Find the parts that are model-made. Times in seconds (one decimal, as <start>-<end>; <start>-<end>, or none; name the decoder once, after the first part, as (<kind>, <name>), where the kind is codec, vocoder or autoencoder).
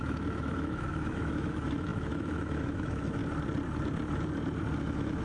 0.0-3.2 (autoencoder, DAC-VAE); 4.8-5.2